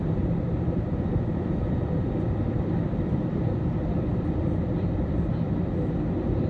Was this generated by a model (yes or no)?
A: no